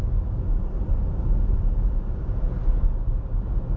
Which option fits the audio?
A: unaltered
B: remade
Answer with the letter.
A